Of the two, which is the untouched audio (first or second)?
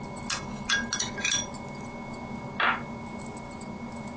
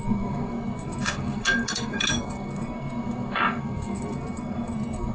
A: first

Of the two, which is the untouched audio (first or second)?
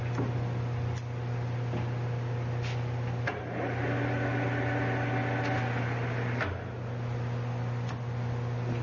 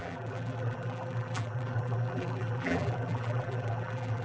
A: first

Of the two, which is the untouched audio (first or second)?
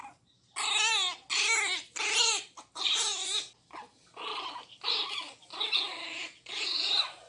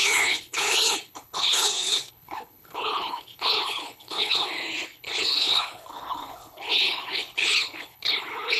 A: first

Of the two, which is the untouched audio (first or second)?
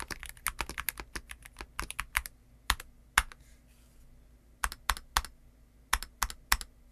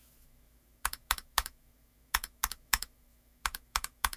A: first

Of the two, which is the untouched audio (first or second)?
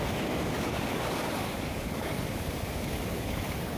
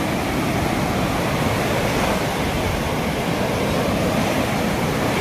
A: second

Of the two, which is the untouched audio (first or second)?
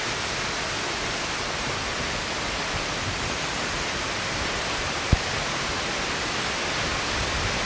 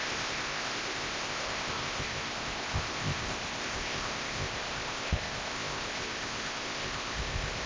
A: first